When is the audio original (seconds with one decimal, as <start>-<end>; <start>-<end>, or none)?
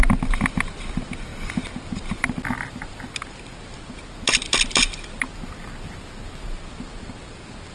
0.0-7.7